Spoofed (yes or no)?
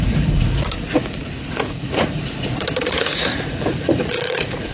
yes